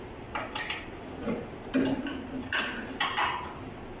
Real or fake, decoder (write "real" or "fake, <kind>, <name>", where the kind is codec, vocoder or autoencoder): real